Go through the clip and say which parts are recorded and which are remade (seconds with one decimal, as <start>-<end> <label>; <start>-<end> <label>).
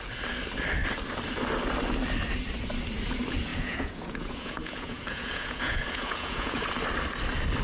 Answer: 0.0-3.5 recorded; 3.5-6.7 remade; 6.7-7.6 recorded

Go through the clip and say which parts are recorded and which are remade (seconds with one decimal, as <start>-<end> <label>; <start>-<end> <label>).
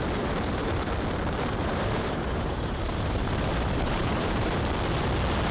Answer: 0.0-1.6 recorded; 1.6-4.6 remade; 4.6-5.5 recorded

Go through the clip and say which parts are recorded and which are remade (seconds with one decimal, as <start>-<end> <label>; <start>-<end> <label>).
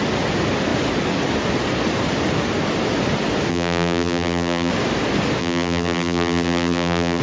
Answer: 0.0-3.5 recorded; 3.5-4.7 remade; 4.7-5.4 recorded; 5.4-7.2 remade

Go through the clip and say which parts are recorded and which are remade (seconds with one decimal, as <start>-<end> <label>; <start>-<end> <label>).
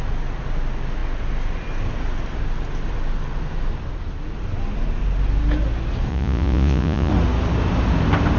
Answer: 0.0-6.1 recorded; 6.1-7.1 remade; 7.1-8.4 recorded